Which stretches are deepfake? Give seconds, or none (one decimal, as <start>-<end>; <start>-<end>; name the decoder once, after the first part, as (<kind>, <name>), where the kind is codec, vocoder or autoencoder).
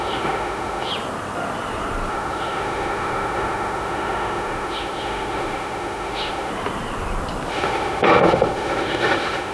0.0-0.9 (autoencoder, DAC-VAE); 2.1-6.5; 7.5-9.5